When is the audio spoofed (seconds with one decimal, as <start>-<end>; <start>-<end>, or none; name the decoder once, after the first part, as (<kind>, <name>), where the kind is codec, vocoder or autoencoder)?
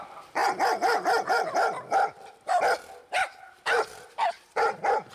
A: 0.0-0.4 (vocoder, BigVGAN v2); 1.3-3.2; 3.9-5.1